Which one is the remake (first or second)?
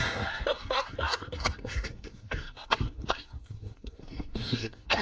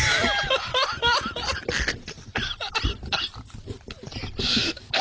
first